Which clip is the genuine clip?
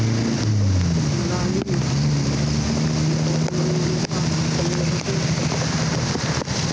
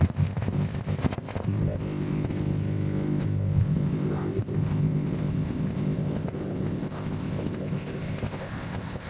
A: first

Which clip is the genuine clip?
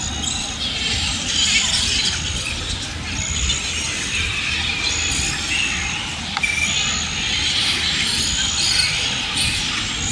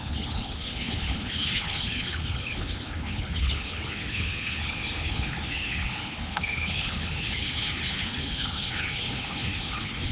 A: first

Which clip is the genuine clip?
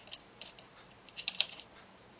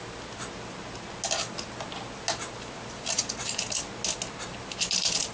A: second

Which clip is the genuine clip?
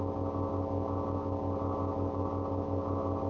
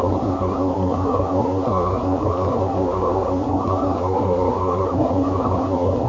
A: first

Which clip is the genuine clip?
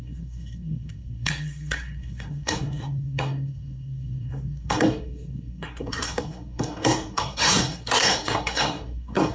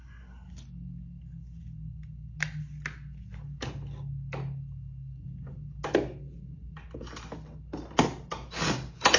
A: second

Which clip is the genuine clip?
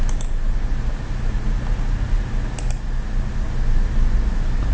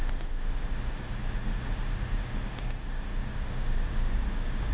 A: first